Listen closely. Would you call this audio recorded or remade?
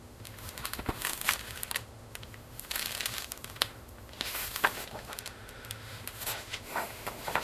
remade